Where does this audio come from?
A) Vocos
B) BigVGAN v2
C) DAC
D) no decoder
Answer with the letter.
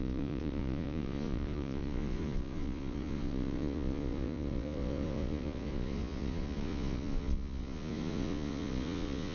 A